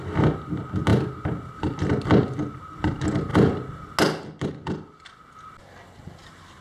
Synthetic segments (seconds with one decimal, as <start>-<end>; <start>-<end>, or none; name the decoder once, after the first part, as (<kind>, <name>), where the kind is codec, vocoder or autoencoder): none